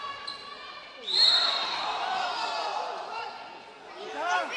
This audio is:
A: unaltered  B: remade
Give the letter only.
A